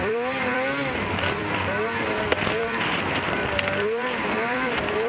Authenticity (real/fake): fake